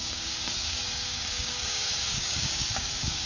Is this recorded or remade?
remade